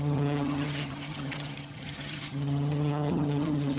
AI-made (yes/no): yes